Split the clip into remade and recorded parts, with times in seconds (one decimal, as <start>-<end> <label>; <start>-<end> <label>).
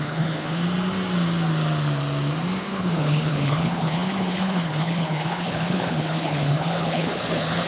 0.0-0.6 remade; 0.6-2.6 recorded; 2.6-7.7 remade